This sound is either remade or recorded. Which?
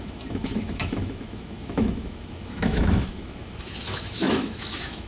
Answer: remade